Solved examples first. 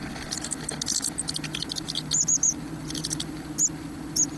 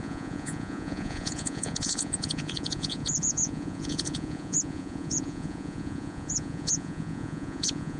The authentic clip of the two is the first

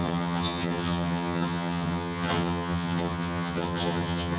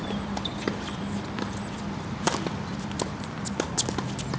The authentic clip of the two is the second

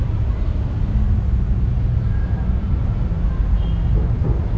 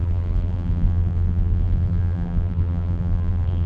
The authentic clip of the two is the first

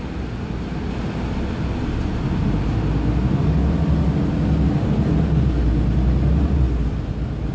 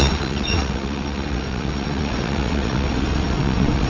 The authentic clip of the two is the first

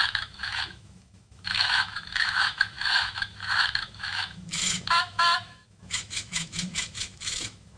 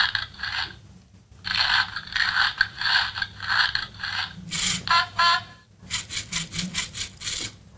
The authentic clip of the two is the second